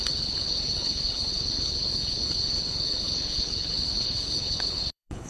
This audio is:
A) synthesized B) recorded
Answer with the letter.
A